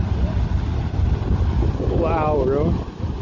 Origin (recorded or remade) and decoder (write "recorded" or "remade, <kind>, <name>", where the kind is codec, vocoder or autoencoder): recorded